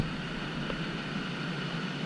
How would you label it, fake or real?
real